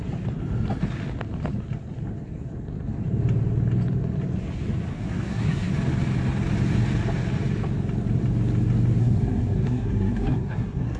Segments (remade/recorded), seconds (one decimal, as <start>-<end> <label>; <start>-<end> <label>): 0.0-4.9 recorded; 4.9-5.7 remade; 5.7-9.0 recorded; 9.0-11.0 remade

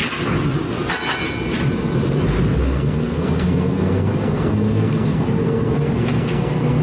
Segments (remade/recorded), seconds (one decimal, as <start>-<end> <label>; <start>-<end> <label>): 0.0-2.6 recorded; 2.6-6.8 remade

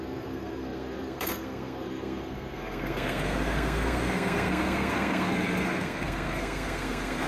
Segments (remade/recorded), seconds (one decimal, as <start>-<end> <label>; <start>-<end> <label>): 0.0-7.3 remade

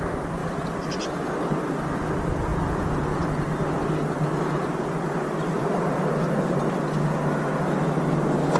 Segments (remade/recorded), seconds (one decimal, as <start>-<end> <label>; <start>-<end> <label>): 0.0-0.4 recorded; 0.4-2.1 remade; 2.1-2.5 recorded; 2.5-3.1 remade; 3.1-5.6 recorded; 5.6-6.3 remade; 6.3-8.6 recorded

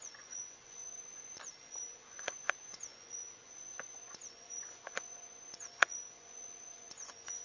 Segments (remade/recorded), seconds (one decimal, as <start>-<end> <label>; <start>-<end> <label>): 0.0-7.4 remade

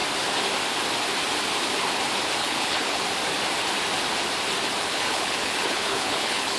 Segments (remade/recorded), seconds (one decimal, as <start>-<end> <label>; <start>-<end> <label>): 0.0-2.4 recorded; 2.4-3.0 remade; 3.0-4.8 recorded; 4.8-6.6 remade

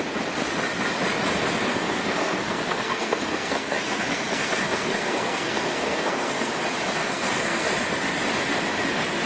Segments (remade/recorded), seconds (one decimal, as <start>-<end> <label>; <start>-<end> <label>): 0.0-1.7 recorded; 1.7-6.5 remade; 6.5-7.0 recorded; 7.0-7.7 remade; 7.7-9.3 recorded

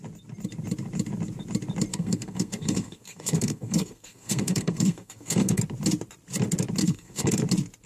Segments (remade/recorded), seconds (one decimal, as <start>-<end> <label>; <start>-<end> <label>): 0.0-1.9 recorded; 1.9-5.6 remade; 5.6-6.8 recorded; 6.8-7.3 remade; 7.3-7.9 recorded